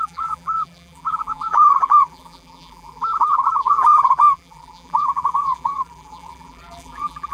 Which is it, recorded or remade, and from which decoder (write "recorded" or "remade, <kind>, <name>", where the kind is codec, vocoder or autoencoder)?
remade, vocoder, BigVGAN v2